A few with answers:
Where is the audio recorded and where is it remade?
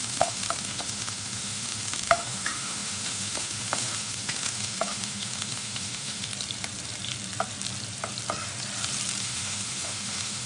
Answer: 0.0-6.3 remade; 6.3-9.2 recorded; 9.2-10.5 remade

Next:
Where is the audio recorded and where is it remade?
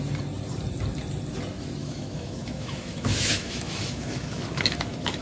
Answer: 0.0-1.8 recorded; 1.8-5.2 remade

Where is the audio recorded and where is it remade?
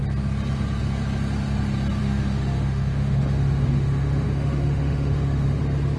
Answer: 0.0-2.0 recorded; 2.0-5.6 remade; 5.6-6.0 recorded